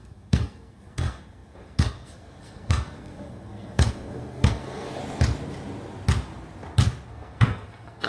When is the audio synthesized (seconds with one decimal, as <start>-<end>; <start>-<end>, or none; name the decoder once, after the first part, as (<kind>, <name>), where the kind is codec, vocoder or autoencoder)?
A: 0.0-5.0 (codec, SNAC); 7.1-8.1